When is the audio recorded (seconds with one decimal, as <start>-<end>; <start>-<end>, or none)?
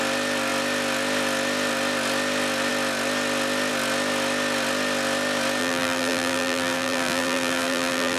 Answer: 0.0-5.6